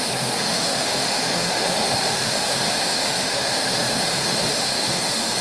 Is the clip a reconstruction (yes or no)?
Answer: yes